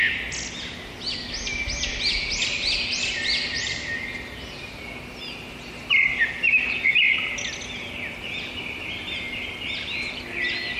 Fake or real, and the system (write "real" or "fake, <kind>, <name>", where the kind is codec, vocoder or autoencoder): real